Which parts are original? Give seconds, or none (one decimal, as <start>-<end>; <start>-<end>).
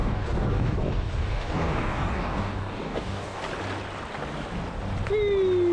3.4-5.7